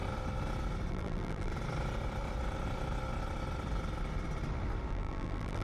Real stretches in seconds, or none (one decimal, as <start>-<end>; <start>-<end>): 0.0-0.9; 1.5-4.9